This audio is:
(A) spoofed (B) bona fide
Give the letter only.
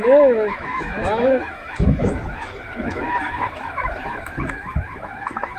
A